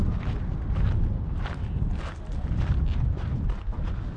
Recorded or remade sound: recorded